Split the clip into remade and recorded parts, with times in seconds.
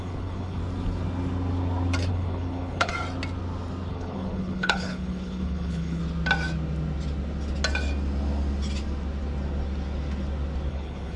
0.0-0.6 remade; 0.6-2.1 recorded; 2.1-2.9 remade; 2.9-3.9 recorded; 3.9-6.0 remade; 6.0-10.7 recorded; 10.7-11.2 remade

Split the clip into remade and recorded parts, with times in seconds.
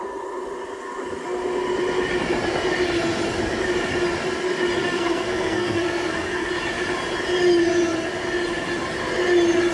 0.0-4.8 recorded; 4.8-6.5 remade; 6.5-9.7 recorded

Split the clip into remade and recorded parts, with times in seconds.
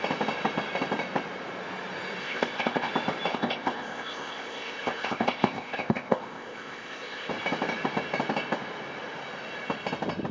0.0-2.2 recorded; 2.2-2.9 remade; 2.9-3.3 recorded; 3.3-7.3 remade; 7.3-10.3 recorded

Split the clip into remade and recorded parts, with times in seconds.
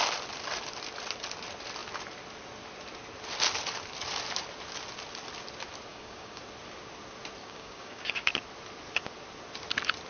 0.0-5.9 recorded; 5.9-6.4 remade; 6.4-7.4 recorded; 7.4-8.3 remade; 8.3-10.1 recorded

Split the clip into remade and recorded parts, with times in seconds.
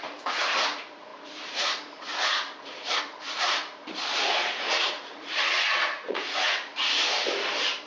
0.0-6.7 remade; 6.7-7.9 recorded